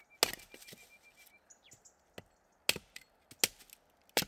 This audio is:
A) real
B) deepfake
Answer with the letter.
A